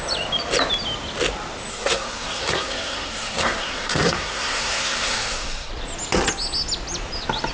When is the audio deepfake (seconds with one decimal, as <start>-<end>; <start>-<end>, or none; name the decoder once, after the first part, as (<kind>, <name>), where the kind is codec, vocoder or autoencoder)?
1.7-5.7 (codec, SNAC)